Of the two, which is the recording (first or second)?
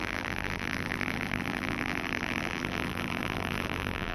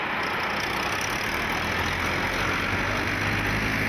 second